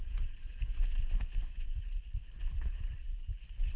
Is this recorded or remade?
recorded